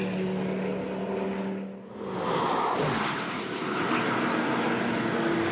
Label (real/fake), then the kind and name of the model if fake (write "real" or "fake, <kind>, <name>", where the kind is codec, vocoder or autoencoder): real